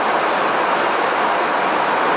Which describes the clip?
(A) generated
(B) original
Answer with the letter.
B